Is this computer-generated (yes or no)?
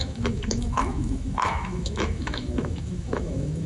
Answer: yes